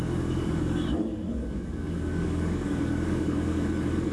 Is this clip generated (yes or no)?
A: yes